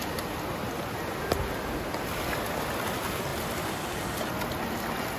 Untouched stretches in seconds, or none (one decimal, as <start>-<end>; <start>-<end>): 0.0-5.2